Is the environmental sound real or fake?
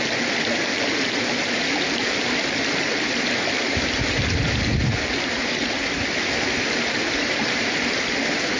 real